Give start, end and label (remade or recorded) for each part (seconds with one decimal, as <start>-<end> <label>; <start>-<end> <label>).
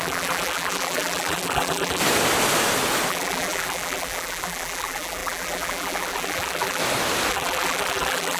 0.0-2.0 remade; 2.0-3.1 recorded; 3.1-6.8 remade; 6.8-7.3 recorded; 7.3-8.4 remade